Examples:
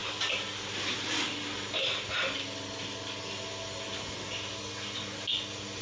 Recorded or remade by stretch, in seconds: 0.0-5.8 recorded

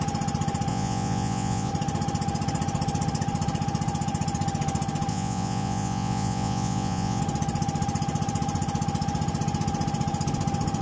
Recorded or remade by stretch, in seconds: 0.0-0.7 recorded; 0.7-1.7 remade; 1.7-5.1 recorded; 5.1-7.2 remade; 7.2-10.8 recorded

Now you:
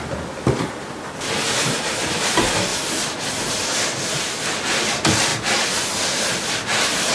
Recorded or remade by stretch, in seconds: 0.0-7.1 recorded